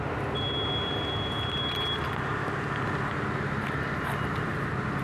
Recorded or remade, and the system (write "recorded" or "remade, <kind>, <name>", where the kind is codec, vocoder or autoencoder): recorded